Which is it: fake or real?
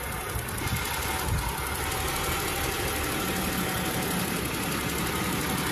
real